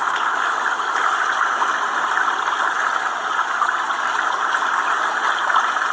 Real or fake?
real